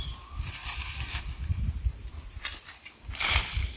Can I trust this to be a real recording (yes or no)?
no